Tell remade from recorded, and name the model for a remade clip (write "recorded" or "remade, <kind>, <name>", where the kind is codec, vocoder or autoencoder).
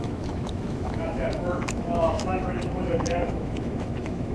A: remade, autoencoder, DAC-VAE